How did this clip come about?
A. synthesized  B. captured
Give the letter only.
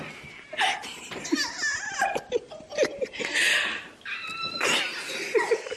B